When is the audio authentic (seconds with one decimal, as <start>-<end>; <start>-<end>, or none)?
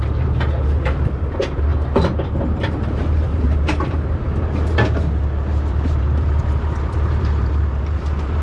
1.7-2.6